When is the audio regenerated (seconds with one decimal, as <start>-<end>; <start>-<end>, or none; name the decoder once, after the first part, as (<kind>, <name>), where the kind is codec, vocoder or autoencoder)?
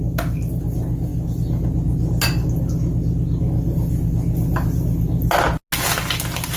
none